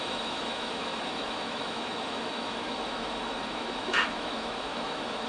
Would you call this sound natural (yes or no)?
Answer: no